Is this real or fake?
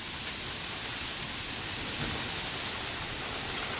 real